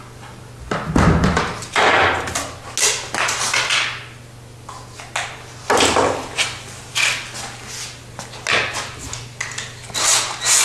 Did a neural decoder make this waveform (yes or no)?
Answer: no